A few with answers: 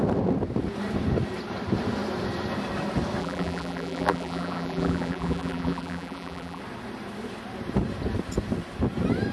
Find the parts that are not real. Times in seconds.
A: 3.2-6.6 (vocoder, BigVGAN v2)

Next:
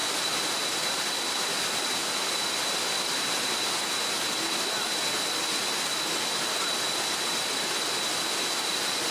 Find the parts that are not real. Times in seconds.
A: 0.0-1.6 (vocoder, BigVGAN v2)

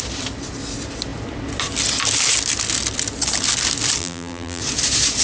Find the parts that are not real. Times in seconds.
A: 4.0-4.6 (vocoder, BigVGAN v2)

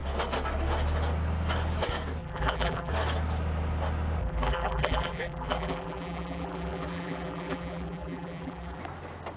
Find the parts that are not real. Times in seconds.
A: 2.2-2.9 (vocoder, BigVGAN v2); 4.2-8.8

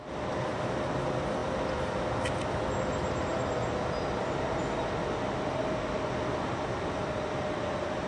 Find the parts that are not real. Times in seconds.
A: none

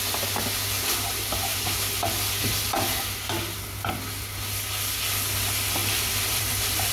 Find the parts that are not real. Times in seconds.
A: 5.8-6.9 (vocoder, BigVGAN v2)

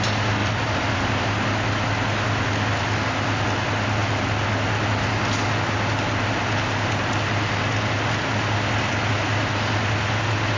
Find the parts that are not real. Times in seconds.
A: 0.4-1.2 (vocoder, BigVGAN v2)

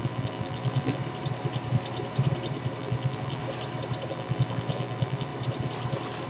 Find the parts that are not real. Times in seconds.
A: 0.0-1.0 (vocoder, BigVGAN v2); 2.8-3.4; 4.1-5.3